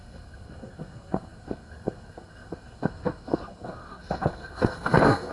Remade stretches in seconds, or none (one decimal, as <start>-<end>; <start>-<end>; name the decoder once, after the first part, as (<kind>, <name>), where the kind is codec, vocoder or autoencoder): 0.0-5.3 (codec, SNAC)